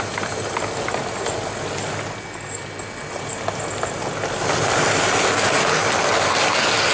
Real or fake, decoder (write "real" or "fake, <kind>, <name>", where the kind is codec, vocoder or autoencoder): real